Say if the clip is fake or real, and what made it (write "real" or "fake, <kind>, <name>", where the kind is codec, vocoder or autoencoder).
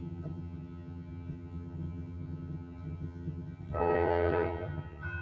fake, vocoder, HiFi-GAN